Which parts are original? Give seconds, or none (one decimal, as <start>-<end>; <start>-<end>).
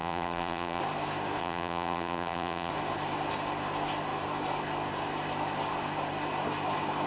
0.8-1.4; 2.7-7.1